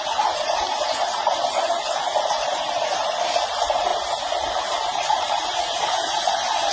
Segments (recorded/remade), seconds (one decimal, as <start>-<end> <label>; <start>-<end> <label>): 0.0-3.9 remade; 3.9-4.5 recorded; 4.5-6.7 remade